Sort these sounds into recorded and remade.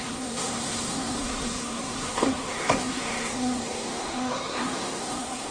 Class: remade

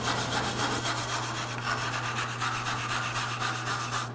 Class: recorded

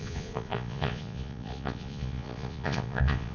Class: remade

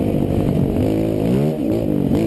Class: recorded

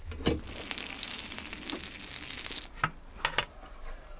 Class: recorded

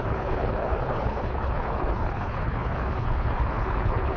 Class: remade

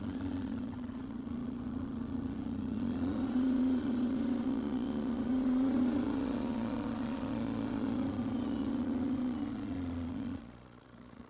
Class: remade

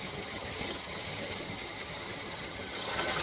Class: remade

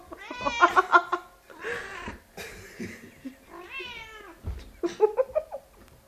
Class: recorded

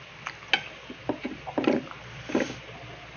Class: recorded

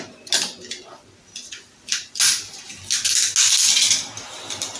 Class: recorded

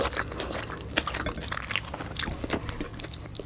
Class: recorded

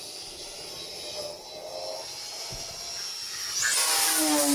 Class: recorded